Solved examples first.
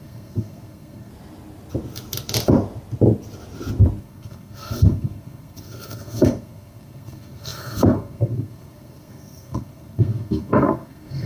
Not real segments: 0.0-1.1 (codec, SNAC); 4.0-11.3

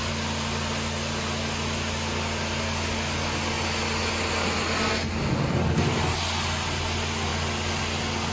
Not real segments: none

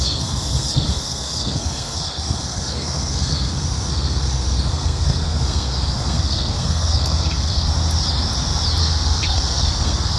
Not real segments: 0.0-7.7 (codec, SNAC); 8.8-10.2

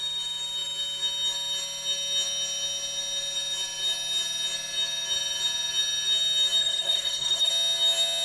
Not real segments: 6.6-7.5 (codec, SNAC)

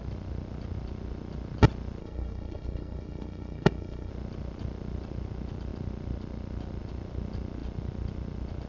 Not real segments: 2.0-4.1 (codec, SNAC)

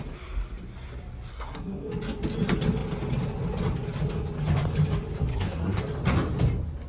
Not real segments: 1.3-1.9 (codec, SNAC); 5.3-5.8

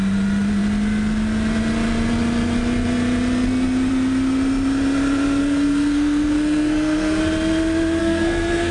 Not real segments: 5.4-7.2 (codec, SNAC); 8.0-8.7

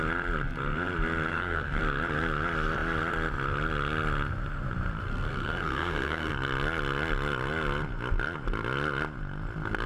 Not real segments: 1.3-1.8 (codec, SNAC); 5.1-6.3